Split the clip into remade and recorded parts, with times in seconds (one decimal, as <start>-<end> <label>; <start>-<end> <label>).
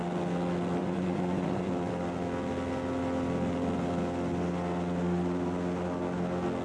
0.0-0.8 recorded; 0.8-1.7 remade; 1.7-6.6 recorded